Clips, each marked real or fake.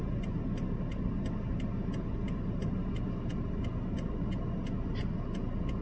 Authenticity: real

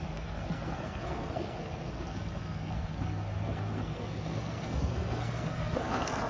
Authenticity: fake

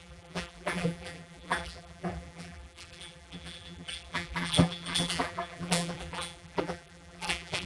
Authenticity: fake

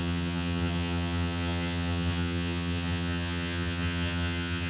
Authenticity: fake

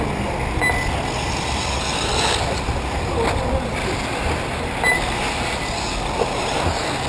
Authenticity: real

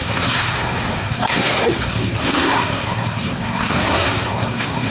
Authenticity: fake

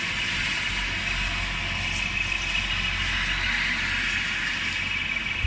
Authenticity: real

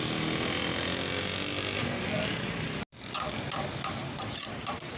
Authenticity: real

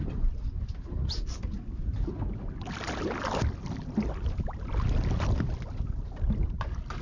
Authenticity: real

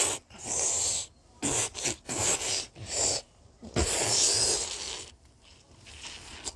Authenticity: real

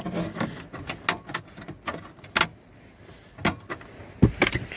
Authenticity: real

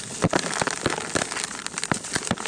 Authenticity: real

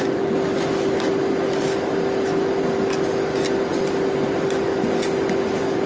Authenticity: real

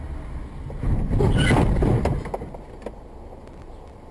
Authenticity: real